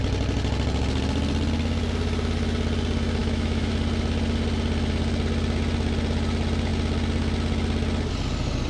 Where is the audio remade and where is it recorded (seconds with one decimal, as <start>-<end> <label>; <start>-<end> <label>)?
0.0-3.2 recorded; 3.2-3.7 remade; 3.7-8.7 recorded